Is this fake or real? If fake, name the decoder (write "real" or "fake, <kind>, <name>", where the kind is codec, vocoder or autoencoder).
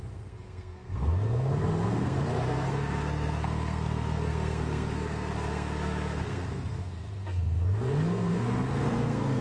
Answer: fake, codec, SNAC